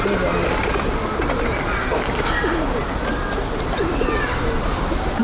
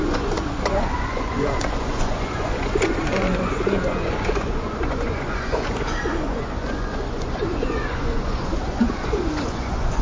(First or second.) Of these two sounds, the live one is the first